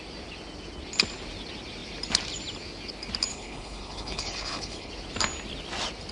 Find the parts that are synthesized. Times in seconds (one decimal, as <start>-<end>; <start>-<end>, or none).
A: 3.3-4.9